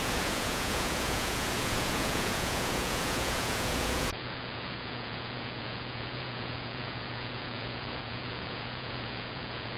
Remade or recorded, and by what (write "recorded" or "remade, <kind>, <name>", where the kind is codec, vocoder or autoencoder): remade, vocoder, Vocos